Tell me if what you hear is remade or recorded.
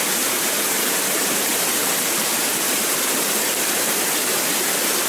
remade